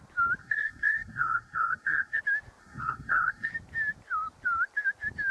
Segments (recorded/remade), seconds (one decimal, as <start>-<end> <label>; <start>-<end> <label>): 0.0-0.4 recorded; 0.4-2.2 remade; 2.2-2.6 recorded; 2.6-3.5 remade; 3.5-5.3 recorded